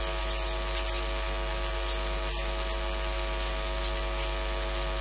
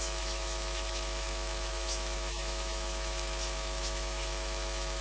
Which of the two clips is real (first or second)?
first